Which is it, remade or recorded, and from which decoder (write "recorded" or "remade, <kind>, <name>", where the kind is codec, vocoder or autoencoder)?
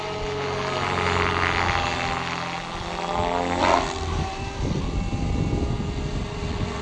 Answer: recorded